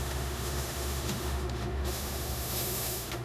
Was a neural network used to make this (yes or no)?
yes